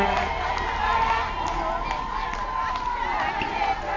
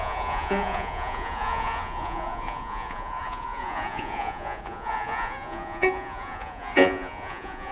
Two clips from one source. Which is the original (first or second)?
first